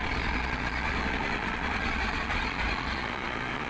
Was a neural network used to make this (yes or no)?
yes